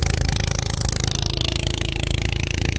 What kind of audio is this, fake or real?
fake